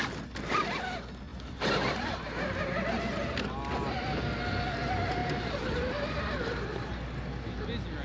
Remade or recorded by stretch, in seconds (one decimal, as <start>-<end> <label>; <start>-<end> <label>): 0.0-1.3 recorded; 1.3-3.0 remade; 3.0-5.2 recorded; 5.2-6.9 remade; 6.9-8.0 recorded